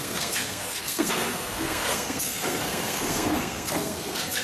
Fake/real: fake